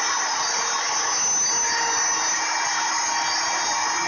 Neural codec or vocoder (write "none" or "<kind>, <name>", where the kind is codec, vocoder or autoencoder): none